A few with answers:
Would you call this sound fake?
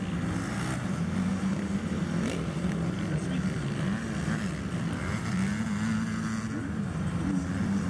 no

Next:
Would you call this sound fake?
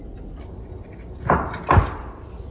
yes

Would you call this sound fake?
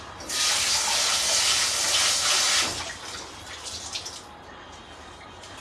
no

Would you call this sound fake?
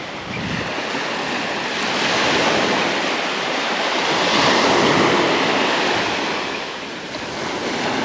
no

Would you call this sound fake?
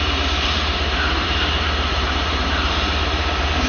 yes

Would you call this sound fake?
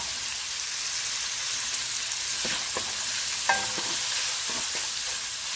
no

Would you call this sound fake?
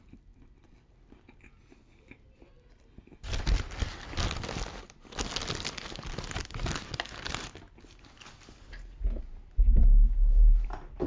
no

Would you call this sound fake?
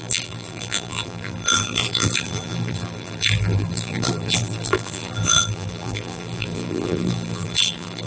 yes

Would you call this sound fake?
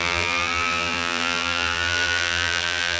yes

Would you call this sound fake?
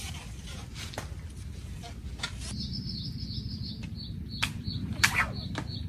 no